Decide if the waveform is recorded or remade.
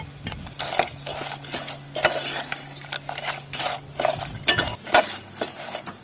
recorded